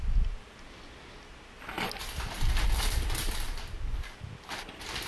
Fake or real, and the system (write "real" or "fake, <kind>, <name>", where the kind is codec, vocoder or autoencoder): real